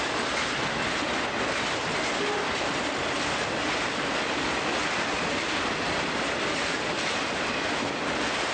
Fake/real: real